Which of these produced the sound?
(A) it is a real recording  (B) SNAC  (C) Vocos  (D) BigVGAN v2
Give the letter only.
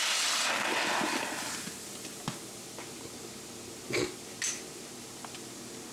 A